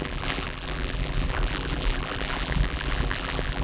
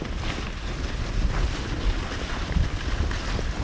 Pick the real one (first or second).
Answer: second